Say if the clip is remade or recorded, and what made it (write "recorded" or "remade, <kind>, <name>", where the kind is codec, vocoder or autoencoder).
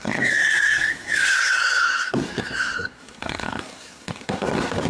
remade, codec, SNAC